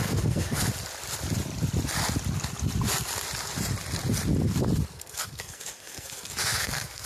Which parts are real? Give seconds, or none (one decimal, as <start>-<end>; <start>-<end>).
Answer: 0.6-4.9